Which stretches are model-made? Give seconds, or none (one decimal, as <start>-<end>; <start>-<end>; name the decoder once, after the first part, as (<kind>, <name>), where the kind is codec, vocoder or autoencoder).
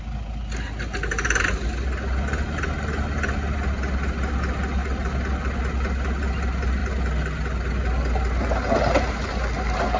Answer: none